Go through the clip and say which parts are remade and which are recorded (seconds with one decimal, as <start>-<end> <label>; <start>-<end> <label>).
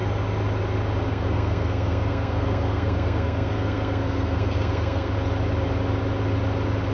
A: 0.0-1.1 recorded; 1.1-5.1 remade; 5.1-6.9 recorded